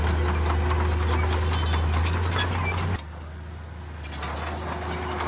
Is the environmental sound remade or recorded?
recorded